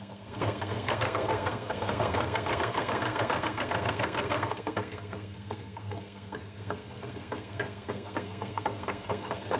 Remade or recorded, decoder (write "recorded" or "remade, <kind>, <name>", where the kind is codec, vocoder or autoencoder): remade, codec, SNAC